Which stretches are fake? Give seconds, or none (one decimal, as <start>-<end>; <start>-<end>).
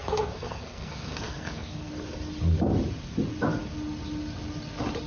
0.0-1.9